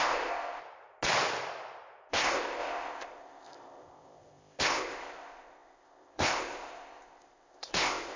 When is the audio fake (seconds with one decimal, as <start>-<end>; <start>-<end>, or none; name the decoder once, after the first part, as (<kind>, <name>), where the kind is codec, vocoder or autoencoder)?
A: 0.0-0.6 (codec, ZipCodec); 2.1-8.2